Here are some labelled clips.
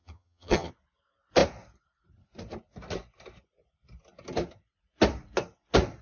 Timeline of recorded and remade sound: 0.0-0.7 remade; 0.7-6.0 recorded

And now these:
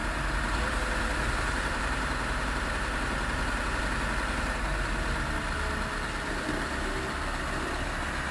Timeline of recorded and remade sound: 0.0-3.8 remade; 3.8-8.3 recorded

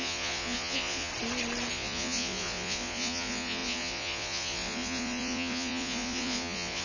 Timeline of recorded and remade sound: 0.0-1.1 remade; 1.1-1.7 recorded; 1.7-6.8 remade

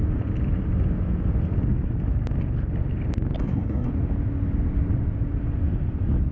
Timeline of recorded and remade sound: 0.0-3.4 recorded; 3.4-3.9 remade; 3.9-6.3 recorded

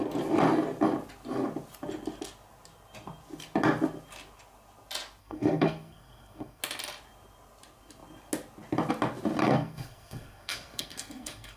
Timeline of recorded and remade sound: 0.0-5.2 recorded; 5.2-6.6 remade; 6.6-9.4 recorded; 9.4-11.6 remade

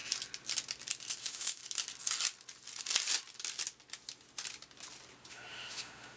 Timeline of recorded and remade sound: 0.0-1.2 recorded; 1.2-1.6 remade; 1.6-5.3 recorded; 5.3-6.2 remade